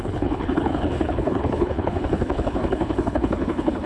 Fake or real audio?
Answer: fake